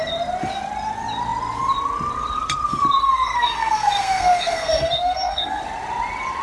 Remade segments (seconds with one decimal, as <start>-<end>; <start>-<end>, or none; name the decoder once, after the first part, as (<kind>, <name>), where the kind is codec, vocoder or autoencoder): 3.0-5.6 (codec, SNAC)